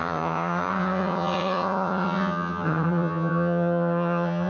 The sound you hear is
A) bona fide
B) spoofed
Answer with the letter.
B